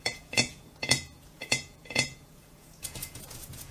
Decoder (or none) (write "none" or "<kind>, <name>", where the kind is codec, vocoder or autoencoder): vocoder, Vocos